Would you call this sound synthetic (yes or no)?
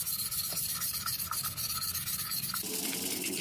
no